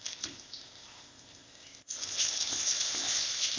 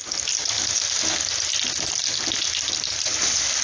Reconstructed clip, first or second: first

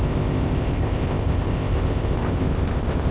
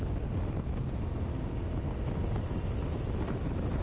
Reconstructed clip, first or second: first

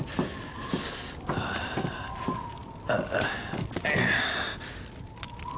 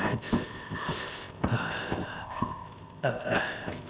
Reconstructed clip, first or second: second